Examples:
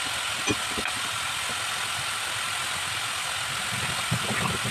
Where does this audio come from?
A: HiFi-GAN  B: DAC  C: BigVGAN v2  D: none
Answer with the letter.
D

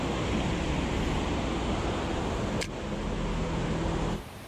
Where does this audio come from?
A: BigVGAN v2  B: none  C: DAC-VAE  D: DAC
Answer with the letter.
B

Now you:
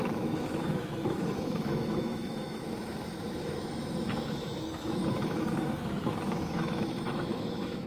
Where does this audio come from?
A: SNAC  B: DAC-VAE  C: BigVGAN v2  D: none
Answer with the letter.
B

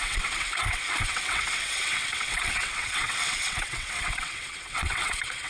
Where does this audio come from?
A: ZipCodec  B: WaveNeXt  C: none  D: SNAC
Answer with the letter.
B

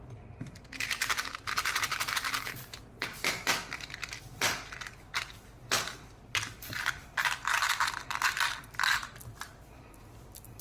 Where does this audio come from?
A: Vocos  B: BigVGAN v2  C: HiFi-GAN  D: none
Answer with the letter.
B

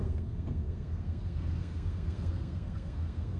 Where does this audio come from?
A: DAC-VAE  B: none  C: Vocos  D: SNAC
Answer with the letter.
D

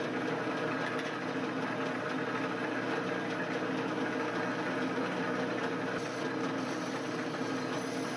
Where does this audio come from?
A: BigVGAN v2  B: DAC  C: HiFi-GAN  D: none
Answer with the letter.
D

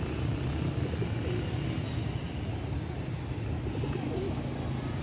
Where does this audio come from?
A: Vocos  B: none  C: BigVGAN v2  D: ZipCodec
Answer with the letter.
B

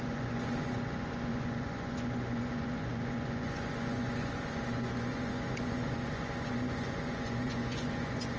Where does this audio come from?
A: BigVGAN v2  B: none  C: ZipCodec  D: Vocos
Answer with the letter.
D